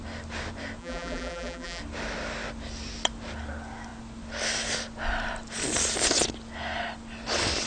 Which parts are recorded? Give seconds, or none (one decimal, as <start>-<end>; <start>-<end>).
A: 0.0-0.8; 1.8-7.7